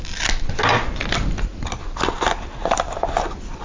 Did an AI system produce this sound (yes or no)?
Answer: no